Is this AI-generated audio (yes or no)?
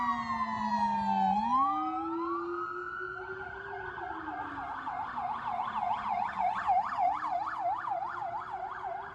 no